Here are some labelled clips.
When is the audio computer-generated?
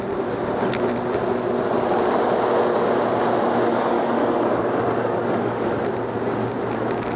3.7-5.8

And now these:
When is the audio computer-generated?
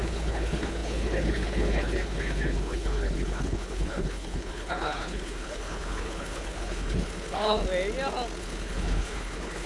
0.0-7.6; 8.4-9.7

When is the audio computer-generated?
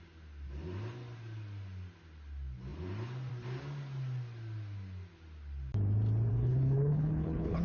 6.3-7.6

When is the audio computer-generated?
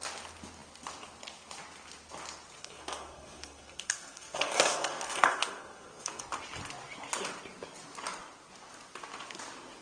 2.6-6.2